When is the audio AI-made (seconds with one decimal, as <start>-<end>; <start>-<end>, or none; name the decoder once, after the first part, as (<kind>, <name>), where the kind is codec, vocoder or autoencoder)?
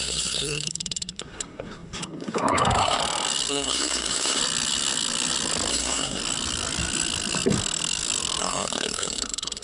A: 0.0-3.0 (codec, SNAC); 3.5-4.4; 5.7-6.2; 8.4-9.6